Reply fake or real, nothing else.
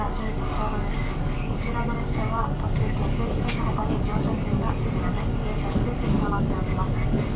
fake